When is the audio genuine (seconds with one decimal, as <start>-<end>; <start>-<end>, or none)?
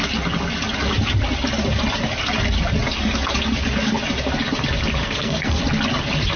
0.0-5.0; 5.6-6.4